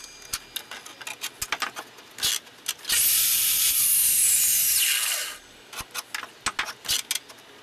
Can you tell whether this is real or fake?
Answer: real